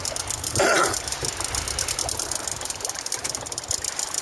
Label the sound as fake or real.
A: real